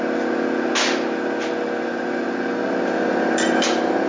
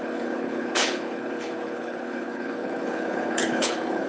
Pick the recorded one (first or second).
first